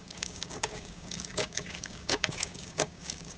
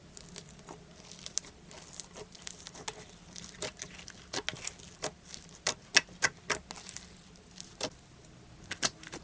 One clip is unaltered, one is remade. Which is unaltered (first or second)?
second